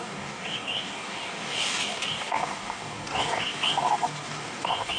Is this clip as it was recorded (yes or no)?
no